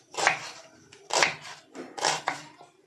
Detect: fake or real real